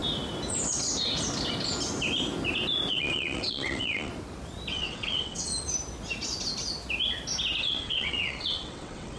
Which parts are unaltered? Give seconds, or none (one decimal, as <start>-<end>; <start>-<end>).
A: 0.0-2.9; 4.1-4.7; 5.5-7.6